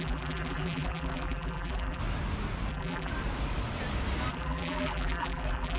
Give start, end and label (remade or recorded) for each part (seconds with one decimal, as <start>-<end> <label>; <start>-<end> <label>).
0.0-2.0 remade; 2.0-2.7 recorded; 2.7-3.1 remade; 3.1-4.3 recorded; 4.3-5.8 remade